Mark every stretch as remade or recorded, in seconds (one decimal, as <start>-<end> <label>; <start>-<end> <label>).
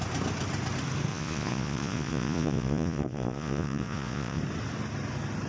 0.0-1.1 recorded; 1.1-4.4 remade; 4.4-5.5 recorded